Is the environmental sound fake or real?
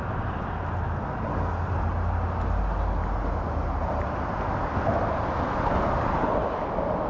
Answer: real